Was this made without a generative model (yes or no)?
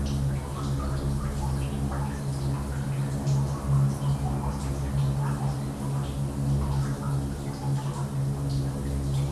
yes